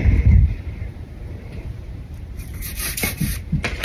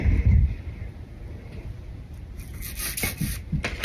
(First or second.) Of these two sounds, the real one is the second